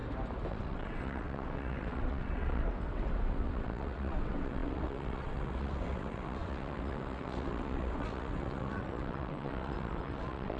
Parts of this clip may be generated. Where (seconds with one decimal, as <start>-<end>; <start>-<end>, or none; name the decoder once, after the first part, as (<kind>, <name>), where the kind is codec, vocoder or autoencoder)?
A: 0.5-10.6 (vocoder, WaveNeXt)